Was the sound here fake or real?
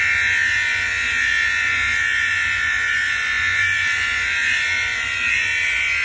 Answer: fake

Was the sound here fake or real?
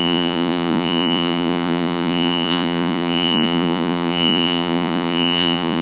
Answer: fake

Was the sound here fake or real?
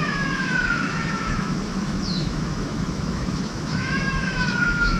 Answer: fake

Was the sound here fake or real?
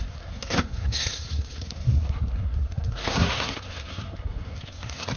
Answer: fake